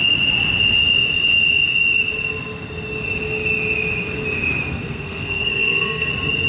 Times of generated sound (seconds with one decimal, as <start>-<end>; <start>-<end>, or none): 4.8-6.1